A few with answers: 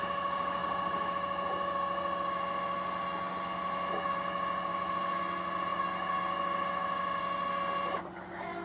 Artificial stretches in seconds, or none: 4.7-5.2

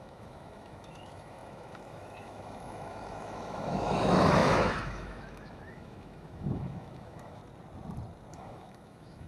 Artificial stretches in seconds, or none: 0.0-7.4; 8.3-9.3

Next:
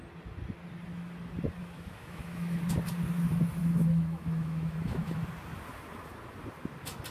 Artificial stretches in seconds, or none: 1.6-2.6; 3.6-5.3

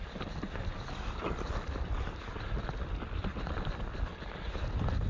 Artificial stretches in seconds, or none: none